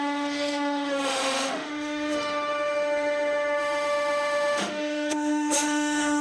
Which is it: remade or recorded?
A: remade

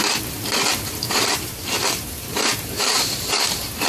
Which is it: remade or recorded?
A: remade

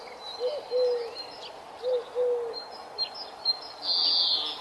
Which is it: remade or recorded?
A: recorded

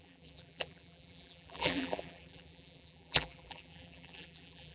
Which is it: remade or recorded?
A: remade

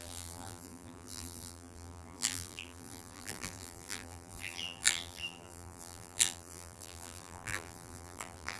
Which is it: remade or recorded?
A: remade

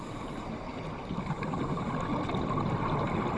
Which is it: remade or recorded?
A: recorded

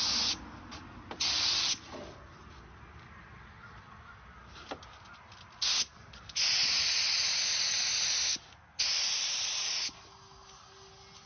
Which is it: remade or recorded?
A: recorded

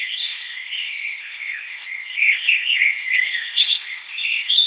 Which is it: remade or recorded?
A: remade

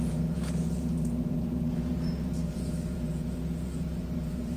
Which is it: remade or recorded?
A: remade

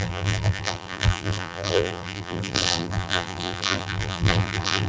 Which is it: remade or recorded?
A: remade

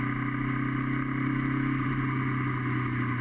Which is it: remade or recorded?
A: recorded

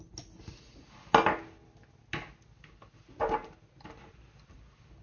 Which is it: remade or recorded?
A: recorded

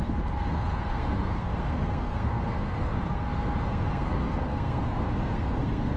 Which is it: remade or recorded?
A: remade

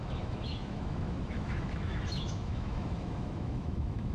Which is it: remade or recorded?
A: remade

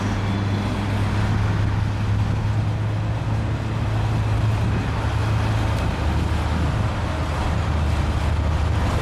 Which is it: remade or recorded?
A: recorded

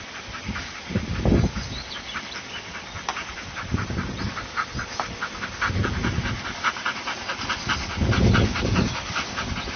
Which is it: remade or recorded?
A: recorded